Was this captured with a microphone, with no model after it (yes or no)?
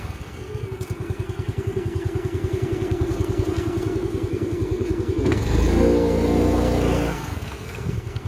no